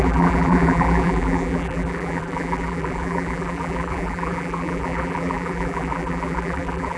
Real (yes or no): no